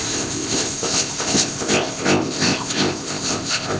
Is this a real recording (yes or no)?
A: no